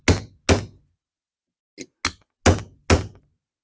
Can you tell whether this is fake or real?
real